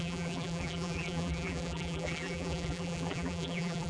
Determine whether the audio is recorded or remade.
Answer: remade